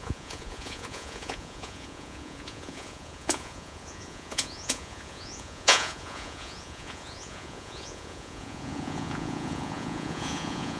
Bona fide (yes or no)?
no